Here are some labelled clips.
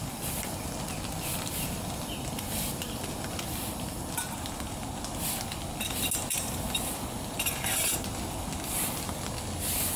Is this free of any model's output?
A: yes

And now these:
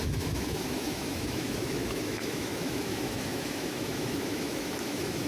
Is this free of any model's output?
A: no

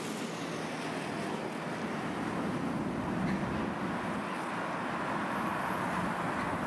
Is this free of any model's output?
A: yes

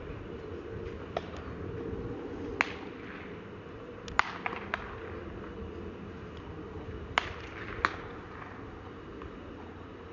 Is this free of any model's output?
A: yes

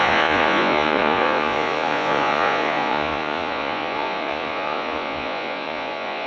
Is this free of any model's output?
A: no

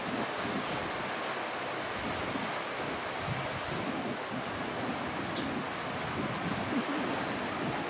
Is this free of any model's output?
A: yes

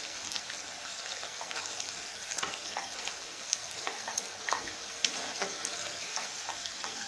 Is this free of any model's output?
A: no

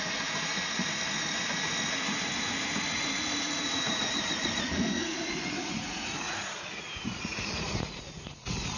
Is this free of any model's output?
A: no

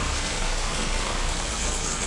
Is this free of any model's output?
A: no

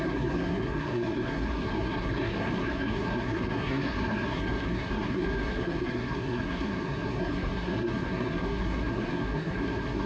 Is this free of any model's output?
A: no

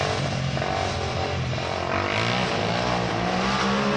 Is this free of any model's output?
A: yes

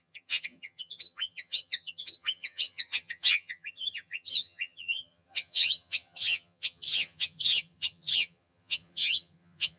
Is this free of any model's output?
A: no